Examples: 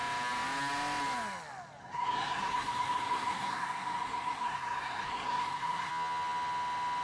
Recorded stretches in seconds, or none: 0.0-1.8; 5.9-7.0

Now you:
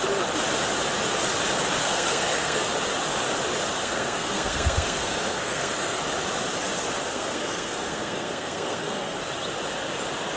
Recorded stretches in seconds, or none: 0.0-1.8; 2.6-3.8; 6.0-7.1; 9.2-10.4